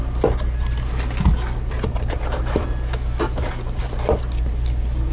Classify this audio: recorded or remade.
recorded